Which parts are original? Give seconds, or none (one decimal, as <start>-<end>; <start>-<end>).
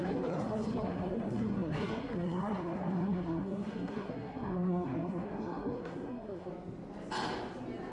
6.5-7.9